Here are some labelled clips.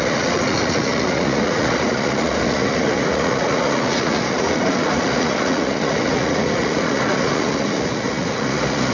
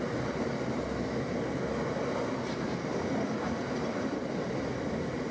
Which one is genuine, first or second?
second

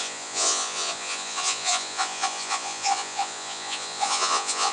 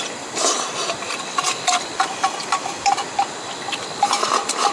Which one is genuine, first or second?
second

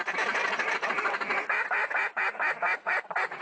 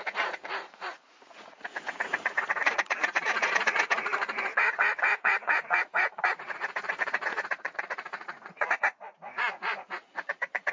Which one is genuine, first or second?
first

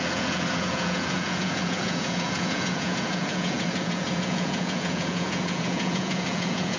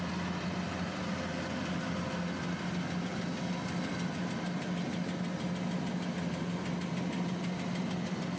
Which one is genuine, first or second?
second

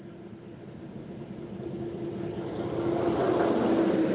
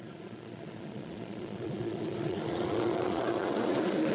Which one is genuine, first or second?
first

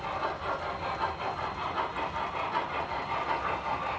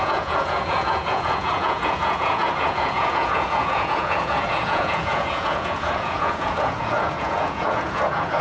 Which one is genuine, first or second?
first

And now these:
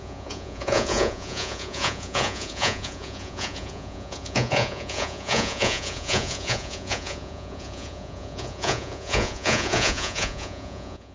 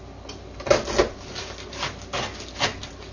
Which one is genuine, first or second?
second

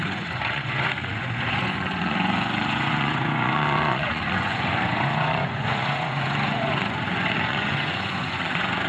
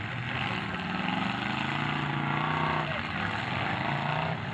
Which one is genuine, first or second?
second